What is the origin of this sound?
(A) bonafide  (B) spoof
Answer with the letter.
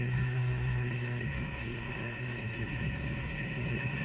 B